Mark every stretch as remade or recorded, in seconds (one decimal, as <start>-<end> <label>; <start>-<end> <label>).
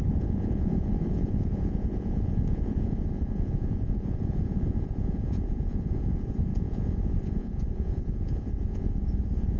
0.0-9.6 remade